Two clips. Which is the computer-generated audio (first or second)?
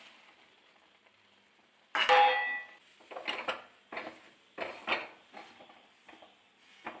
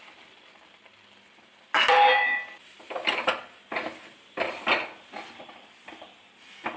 second